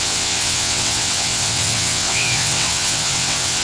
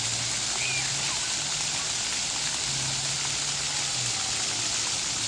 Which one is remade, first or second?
first